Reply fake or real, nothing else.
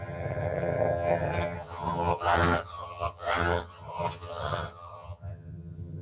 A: fake